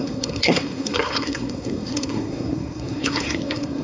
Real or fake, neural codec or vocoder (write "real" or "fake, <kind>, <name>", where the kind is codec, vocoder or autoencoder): fake, codec, SNAC